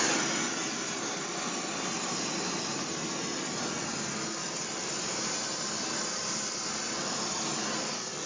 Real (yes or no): yes